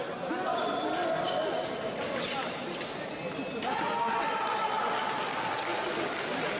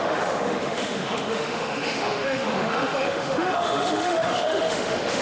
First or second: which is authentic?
first